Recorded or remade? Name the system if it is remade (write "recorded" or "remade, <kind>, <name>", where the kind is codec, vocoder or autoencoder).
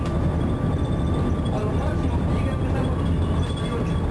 recorded